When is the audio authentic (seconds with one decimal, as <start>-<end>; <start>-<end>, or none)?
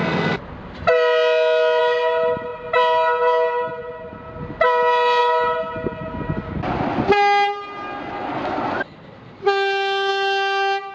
0.0-10.9